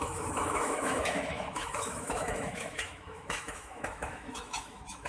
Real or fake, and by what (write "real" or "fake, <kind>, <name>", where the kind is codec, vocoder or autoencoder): fake, autoencoder, DAC-VAE